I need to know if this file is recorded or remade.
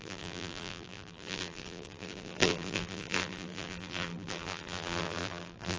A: remade